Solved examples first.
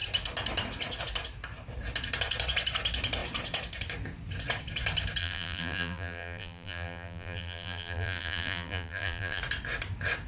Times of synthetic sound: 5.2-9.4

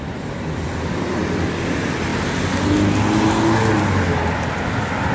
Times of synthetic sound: none

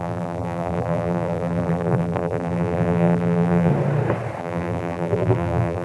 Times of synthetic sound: 0.0-3.7; 4.4-5.8